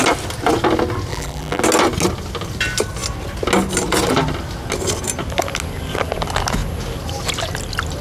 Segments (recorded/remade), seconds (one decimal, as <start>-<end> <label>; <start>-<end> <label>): 0.0-1.1 recorded; 1.1-1.6 remade; 1.6-8.0 recorded